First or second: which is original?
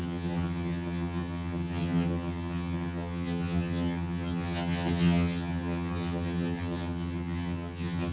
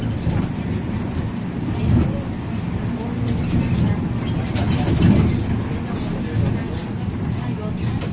second